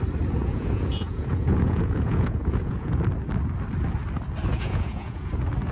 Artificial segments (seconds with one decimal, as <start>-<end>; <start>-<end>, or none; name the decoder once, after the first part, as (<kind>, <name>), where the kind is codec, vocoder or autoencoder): 0.4-3.0 (vocoder, Vocos); 4.5-5.3